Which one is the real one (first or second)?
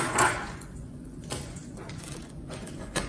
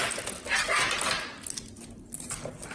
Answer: second